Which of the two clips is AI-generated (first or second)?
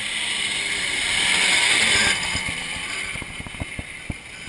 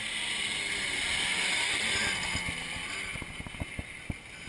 first